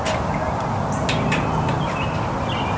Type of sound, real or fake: real